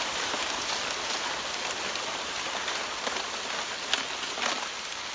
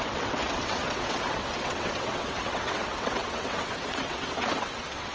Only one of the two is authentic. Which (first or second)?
first